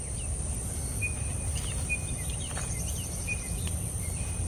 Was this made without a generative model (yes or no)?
yes